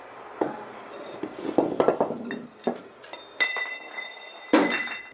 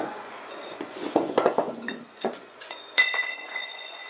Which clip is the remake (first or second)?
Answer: second